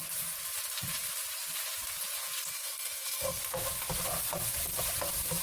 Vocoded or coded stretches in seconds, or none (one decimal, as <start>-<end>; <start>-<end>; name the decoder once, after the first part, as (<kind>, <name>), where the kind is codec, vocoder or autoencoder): 2.5-3.4 (codec, SNAC)